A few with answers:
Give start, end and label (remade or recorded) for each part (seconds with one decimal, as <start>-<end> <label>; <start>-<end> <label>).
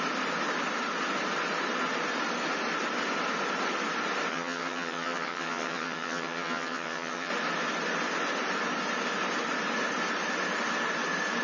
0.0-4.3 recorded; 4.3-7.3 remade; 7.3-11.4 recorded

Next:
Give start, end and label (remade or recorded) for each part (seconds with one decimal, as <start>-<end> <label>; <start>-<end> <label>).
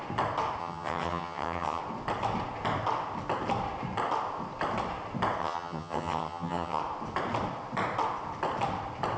0.0-0.6 recorded; 0.6-1.8 remade; 1.8-5.4 recorded; 5.4-6.8 remade; 6.8-9.2 recorded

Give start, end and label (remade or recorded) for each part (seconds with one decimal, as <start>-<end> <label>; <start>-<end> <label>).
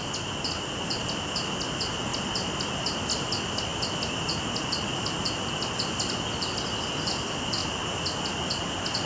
0.0-9.1 recorded